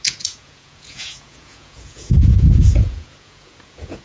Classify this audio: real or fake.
fake